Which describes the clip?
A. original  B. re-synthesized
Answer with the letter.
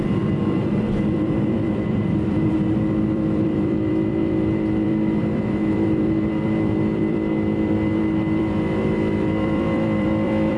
B